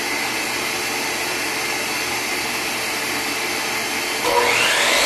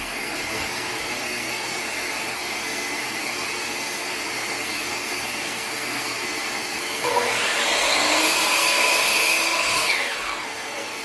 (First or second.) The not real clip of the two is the second